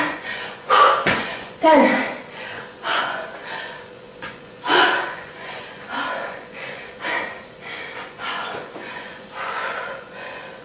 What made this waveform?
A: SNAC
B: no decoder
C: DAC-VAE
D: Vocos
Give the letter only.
D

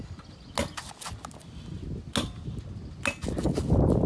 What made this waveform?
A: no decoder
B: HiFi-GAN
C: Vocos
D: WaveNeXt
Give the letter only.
A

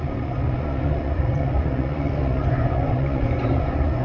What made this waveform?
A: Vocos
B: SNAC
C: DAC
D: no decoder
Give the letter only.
A